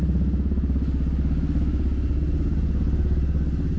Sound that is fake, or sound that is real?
real